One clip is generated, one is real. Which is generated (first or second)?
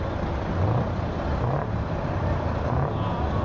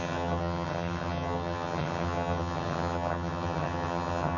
second